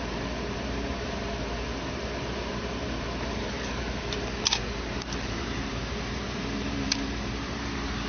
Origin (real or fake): fake